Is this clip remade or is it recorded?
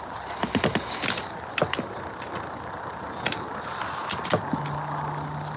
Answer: recorded